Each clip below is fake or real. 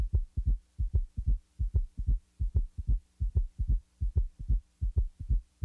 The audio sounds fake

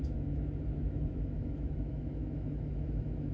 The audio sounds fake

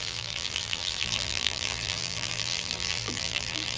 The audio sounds fake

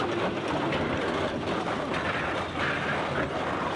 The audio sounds real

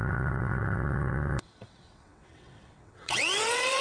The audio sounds fake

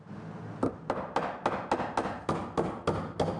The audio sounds real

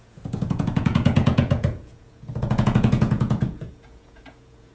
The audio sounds fake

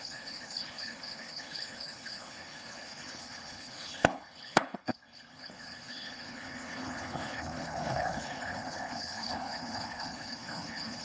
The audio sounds fake